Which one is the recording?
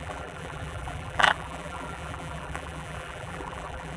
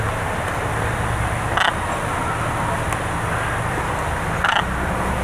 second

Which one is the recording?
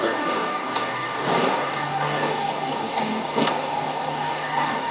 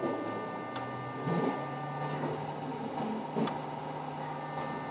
second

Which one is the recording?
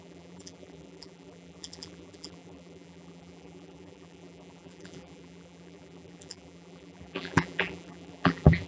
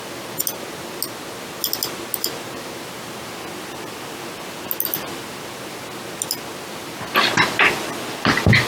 second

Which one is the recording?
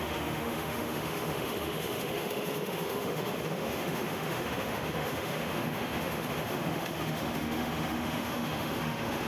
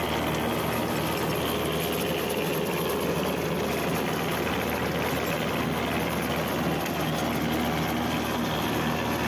second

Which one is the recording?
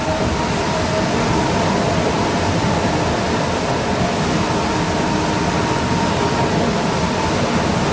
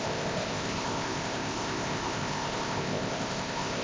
first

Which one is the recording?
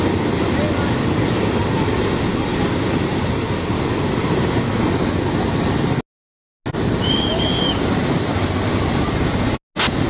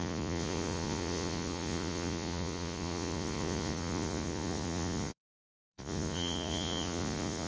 first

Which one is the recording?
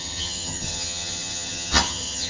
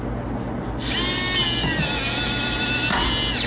second